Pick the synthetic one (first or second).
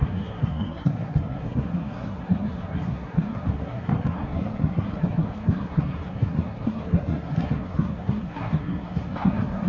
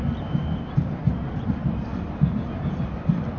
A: first